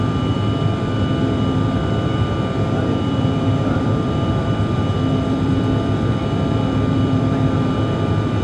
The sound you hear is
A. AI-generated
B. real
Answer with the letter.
A